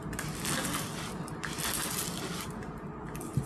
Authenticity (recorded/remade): recorded